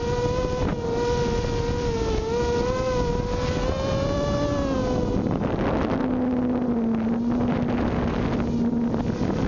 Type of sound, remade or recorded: recorded